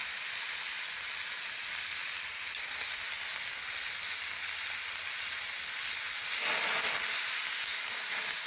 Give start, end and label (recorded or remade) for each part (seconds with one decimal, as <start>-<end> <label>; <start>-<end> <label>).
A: 0.0-8.5 recorded